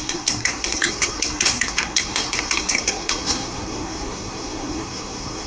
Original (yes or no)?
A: no